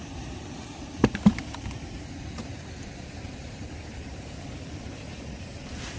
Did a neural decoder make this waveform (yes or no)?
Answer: yes